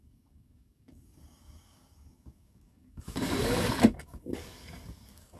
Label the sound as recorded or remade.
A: remade